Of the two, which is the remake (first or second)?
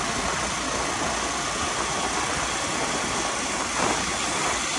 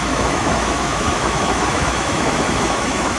second